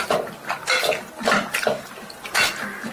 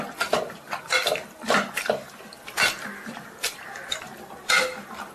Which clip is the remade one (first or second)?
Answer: second